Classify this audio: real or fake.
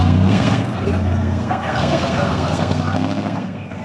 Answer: fake